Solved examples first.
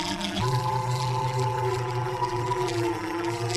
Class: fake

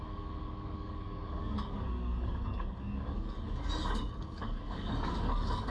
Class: fake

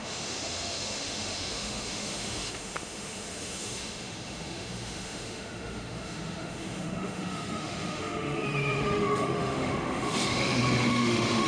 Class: fake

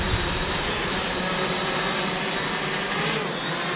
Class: fake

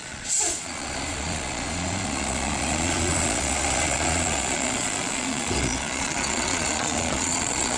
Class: fake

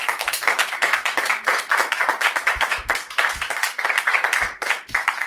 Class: fake